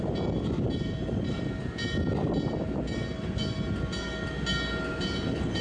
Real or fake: real